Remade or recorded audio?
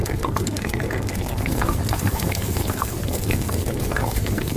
remade